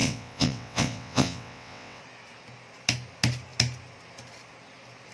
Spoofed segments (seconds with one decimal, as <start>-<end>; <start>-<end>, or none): 0.0-2.0